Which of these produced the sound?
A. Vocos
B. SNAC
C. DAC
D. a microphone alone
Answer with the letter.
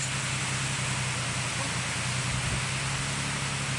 D